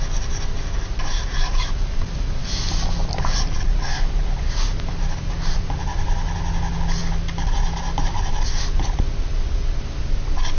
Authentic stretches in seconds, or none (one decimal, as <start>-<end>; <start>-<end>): 0.0-10.6